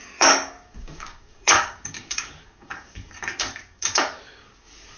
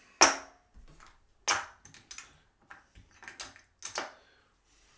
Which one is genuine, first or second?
second